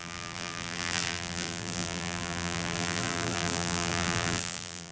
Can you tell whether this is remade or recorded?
remade